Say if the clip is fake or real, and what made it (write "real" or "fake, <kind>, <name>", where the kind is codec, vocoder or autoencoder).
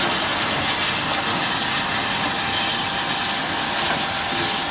real